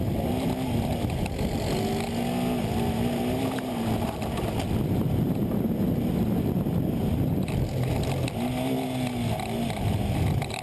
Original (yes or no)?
yes